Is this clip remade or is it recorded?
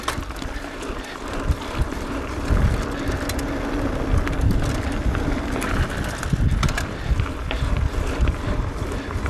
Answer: recorded